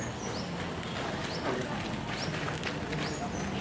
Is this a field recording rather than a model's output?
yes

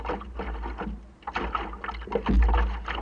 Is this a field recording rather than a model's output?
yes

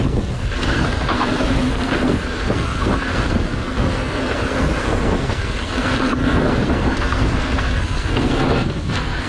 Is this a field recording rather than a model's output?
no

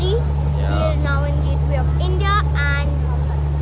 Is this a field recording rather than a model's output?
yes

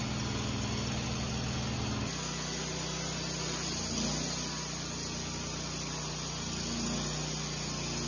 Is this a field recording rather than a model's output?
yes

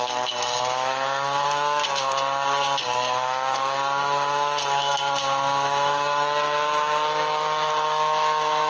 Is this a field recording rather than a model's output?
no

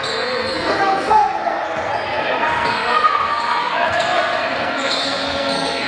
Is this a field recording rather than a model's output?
no